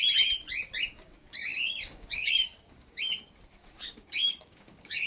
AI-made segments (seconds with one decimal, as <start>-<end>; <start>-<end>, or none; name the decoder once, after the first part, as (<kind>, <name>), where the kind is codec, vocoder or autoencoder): 0.9-3.2 (codec, DAC); 3.6-5.1